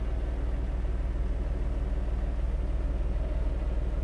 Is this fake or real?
real